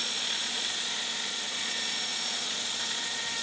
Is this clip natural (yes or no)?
no